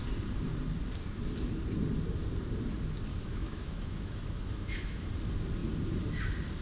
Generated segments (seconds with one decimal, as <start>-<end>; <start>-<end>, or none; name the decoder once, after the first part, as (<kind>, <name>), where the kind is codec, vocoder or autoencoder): 3.1-5.1 (autoencoder, DAC-VAE)